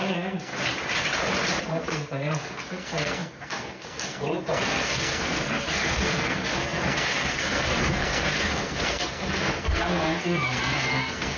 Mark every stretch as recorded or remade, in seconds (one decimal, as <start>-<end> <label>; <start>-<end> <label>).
0.0-0.5 remade; 0.5-1.6 recorded; 1.6-11.4 remade